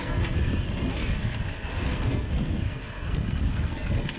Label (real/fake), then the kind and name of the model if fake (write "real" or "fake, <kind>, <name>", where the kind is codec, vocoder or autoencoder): fake, codec, SNAC